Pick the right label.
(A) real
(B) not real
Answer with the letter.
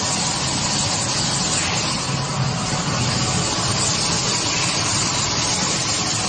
A